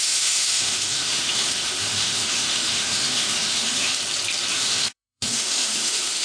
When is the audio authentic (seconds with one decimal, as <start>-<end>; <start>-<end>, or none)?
4.0-4.5